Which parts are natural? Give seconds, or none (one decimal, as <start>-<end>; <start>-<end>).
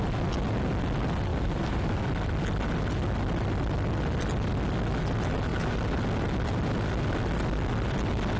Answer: 0.0-1.3; 2.0-8.4